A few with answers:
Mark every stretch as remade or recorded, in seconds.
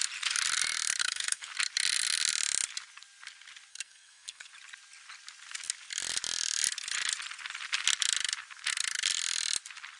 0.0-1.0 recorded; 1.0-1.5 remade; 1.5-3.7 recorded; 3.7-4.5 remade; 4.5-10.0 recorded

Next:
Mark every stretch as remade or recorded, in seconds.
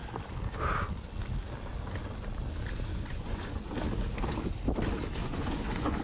0.0-2.9 recorded; 2.9-3.6 remade; 3.6-5.2 recorded; 5.2-6.0 remade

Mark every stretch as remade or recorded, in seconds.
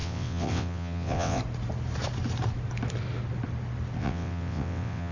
0.0-1.4 remade; 1.4-4.0 recorded; 4.0-5.1 remade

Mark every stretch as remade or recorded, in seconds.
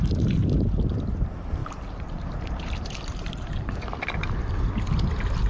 0.0-1.6 recorded; 1.6-3.8 remade; 3.8-5.5 recorded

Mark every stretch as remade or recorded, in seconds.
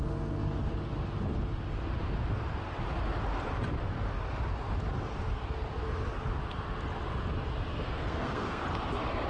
0.0-7.7 recorded; 7.7-8.6 remade; 8.6-9.3 recorded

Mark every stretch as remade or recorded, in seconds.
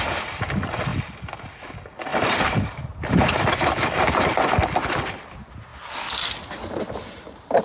0.0-2.1 recorded; 2.1-3.4 remade; 3.4-7.6 recorded